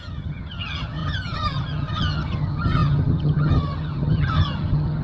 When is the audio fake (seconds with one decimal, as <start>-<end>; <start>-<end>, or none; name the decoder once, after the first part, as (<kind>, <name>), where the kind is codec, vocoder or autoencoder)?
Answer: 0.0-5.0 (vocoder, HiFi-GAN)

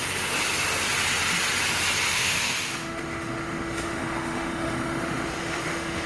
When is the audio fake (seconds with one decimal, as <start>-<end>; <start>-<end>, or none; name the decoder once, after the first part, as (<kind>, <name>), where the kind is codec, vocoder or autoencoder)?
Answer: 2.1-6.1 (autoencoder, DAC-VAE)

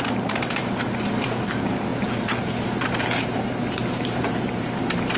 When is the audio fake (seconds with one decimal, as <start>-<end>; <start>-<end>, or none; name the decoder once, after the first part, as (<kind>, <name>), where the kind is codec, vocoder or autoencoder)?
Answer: 0.0-5.2 (vocoder, BigVGAN v2)

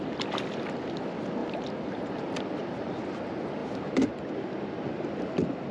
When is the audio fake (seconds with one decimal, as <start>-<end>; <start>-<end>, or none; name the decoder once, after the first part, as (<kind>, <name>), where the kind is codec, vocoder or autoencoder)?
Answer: 1.4-2.4 (vocoder, BigVGAN v2); 3.6-4.1